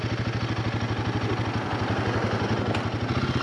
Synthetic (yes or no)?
no